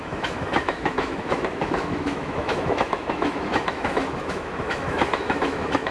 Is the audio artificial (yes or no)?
yes